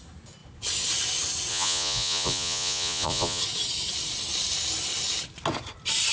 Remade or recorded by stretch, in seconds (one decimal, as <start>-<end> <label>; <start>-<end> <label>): 0.0-1.5 recorded; 1.5-3.4 remade; 3.4-6.1 recorded